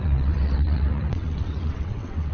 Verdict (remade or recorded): remade